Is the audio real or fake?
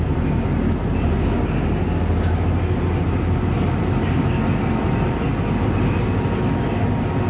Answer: real